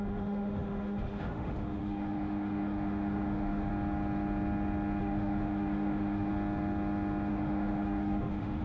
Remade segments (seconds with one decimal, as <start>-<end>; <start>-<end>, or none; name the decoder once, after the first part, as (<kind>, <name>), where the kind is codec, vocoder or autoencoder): 0.0-3.7 (autoencoder, DAC-VAE); 5.0-6.3; 7.3-8.6